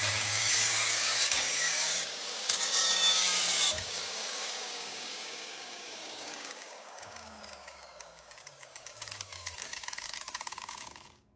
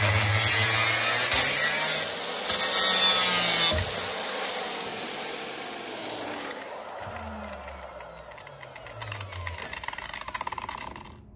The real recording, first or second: second